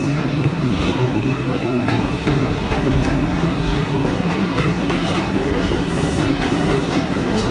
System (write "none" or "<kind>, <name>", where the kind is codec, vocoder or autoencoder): codec, SNAC